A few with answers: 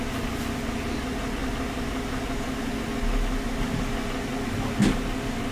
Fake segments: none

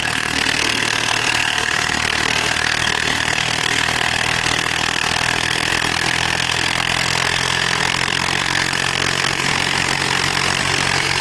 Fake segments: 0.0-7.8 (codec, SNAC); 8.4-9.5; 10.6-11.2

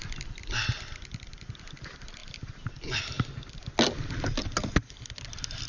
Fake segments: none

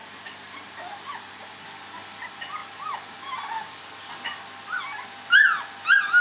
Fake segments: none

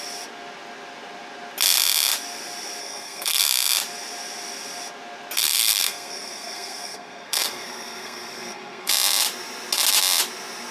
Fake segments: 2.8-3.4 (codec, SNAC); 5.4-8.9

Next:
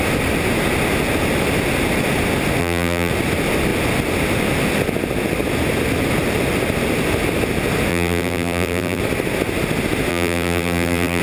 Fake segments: 2.6-3.1 (vocoder, BigVGAN v2); 7.9-9.0; 10.1-11.2